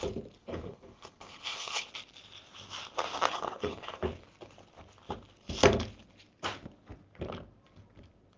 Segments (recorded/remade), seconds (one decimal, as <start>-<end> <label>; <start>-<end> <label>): 0.0-0.4 recorded; 0.4-1.9 remade; 1.9-3.3 recorded; 3.3-4.0 remade; 4.0-8.4 recorded